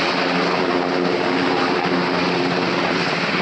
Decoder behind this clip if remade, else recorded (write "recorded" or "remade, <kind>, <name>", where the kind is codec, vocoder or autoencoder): recorded